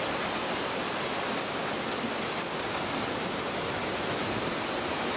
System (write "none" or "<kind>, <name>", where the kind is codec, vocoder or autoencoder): none